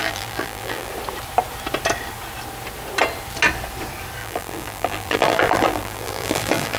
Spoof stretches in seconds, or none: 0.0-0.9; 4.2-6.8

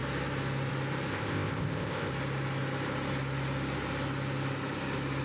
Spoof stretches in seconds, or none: 1.1-2.1

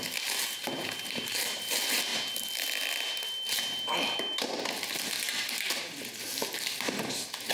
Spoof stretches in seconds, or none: 0.6-1.6